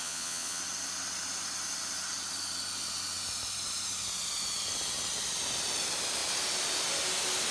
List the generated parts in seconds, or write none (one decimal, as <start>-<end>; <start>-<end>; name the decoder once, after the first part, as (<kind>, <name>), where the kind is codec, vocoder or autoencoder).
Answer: 0.0-0.6 (vocoder, Vocos)